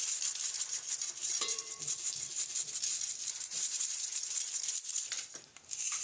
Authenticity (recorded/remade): remade